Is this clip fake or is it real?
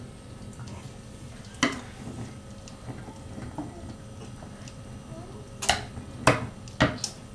real